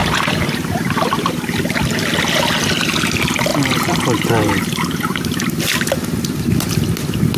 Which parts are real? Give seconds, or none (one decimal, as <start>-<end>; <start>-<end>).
1.3-3.5; 5.6-7.4